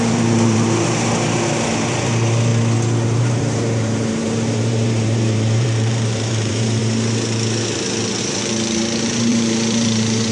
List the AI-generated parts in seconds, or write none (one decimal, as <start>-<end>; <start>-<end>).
0.0-2.5; 3.2-6.8; 8.2-10.3